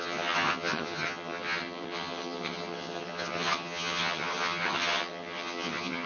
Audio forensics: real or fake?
fake